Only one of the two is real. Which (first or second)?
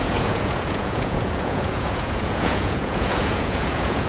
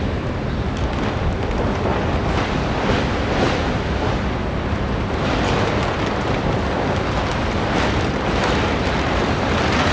second